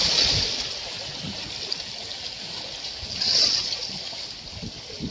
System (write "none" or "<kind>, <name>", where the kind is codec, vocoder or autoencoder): none